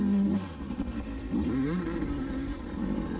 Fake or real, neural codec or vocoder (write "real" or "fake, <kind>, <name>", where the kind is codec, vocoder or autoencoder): real